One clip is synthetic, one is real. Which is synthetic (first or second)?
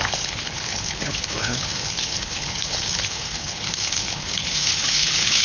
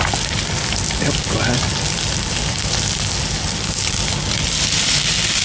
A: first